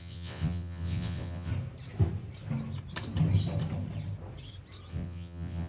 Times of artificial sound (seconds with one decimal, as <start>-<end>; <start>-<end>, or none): 0.0-1.5; 4.9-5.7